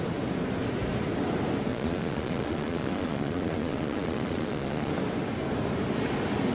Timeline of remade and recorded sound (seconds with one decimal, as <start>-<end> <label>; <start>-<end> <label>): 0.0-1.7 recorded; 1.7-4.9 remade; 4.9-6.5 recorded